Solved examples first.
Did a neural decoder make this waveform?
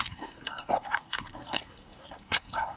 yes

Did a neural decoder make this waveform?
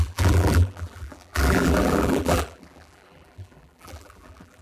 yes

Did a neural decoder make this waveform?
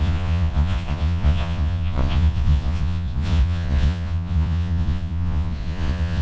yes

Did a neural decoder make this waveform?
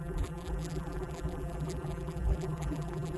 yes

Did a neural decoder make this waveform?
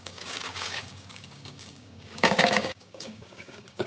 yes